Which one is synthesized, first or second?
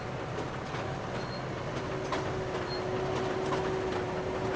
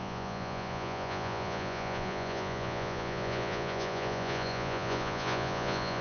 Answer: second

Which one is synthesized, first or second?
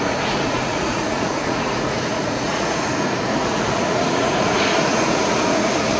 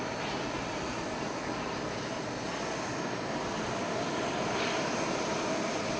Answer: first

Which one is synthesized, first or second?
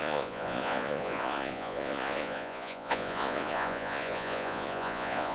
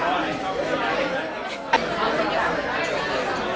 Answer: first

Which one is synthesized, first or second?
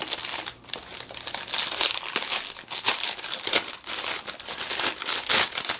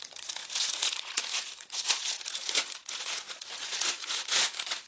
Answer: second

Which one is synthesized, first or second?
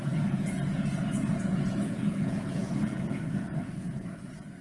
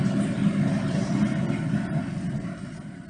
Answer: first